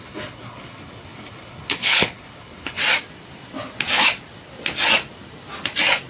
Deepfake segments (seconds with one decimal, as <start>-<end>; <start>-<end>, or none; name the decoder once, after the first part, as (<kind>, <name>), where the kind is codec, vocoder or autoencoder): 0.0-2.8 (codec, HILCodec)